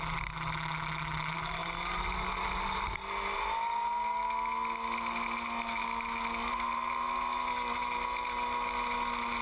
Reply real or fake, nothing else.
real